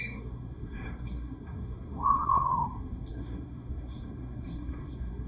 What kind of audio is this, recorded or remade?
remade